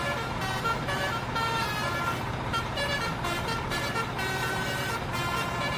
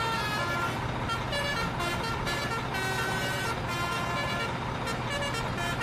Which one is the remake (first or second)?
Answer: first